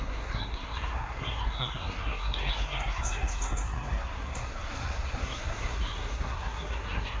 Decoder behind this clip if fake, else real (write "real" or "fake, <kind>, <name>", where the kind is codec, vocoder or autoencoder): fake, codec, SNAC